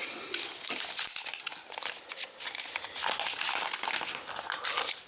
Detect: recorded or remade recorded